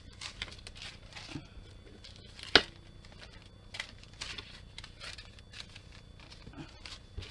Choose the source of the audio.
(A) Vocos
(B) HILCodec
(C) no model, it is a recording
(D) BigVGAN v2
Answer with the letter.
C